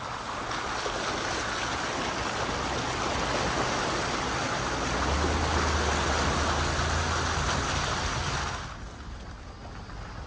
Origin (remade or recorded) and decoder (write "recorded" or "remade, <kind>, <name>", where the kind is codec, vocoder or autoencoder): recorded